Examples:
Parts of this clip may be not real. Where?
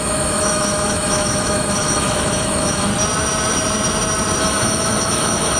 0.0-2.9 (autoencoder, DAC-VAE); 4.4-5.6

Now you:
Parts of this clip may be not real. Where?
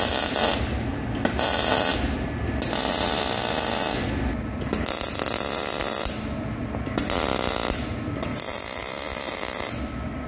none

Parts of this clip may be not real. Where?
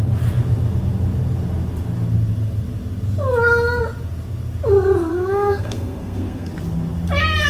5.1-6.5 (codec, SNAC)